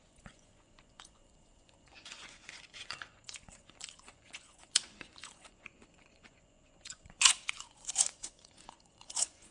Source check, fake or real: fake